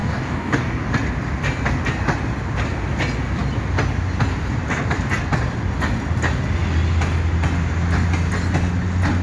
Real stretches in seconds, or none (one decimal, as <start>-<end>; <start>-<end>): 0.9-9.2

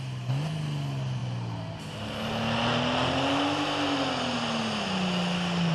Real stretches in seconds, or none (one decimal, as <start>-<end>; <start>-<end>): 0.0-5.7

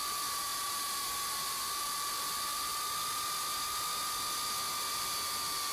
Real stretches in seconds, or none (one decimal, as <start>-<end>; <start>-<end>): 2.7-4.9

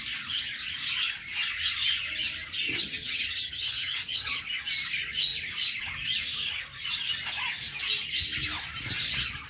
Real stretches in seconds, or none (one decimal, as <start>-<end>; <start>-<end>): 0.0-2.7; 4.4-9.5

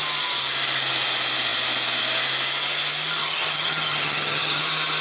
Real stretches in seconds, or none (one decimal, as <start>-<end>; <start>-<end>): 0.0-3.2; 4.6-5.0